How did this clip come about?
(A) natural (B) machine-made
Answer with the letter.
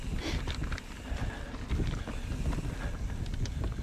A